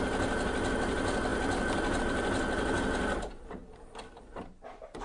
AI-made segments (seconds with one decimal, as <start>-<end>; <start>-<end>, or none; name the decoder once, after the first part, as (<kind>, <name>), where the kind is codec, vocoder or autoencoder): none